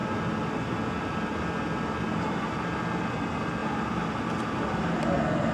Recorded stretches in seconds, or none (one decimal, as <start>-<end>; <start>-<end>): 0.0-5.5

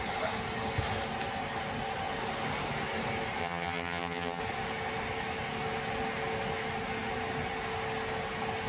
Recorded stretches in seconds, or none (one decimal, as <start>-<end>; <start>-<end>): 0.0-3.4; 4.4-8.7

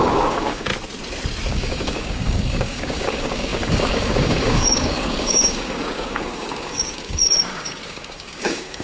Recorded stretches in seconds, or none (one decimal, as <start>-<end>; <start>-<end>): 0.7-1.5

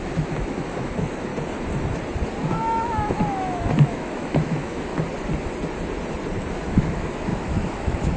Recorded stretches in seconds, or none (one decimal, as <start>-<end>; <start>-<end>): 1.3-2.4; 4.9-6.5

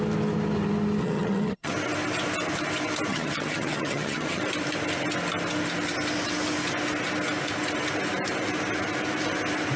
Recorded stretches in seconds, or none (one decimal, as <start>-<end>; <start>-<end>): 0.0-1.0; 1.7-3.1; 4.4-9.8